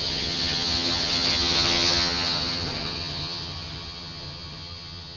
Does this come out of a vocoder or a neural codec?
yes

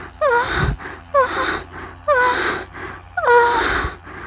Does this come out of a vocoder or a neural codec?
no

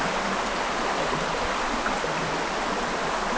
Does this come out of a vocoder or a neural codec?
no